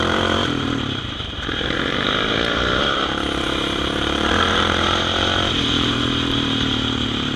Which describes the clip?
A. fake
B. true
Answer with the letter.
A